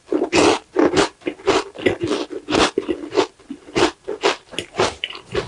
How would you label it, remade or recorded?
recorded